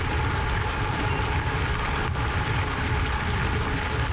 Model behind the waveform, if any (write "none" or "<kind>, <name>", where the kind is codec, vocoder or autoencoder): none